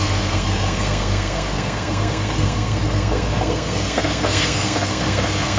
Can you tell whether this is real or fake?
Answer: fake